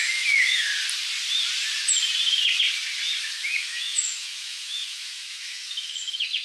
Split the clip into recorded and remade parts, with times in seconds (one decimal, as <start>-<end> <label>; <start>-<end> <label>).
0.0-0.7 remade; 0.7-3.2 recorded; 3.2-6.4 remade